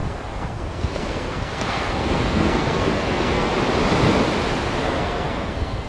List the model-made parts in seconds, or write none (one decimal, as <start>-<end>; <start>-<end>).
0.0-3.5; 4.8-5.9